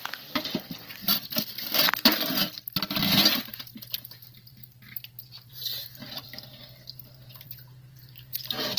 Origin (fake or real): fake